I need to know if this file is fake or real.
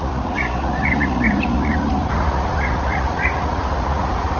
fake